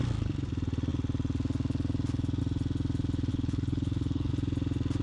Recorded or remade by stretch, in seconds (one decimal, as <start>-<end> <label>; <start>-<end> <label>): 0.0-3.3 recorded; 3.3-4.3 remade; 4.3-5.0 recorded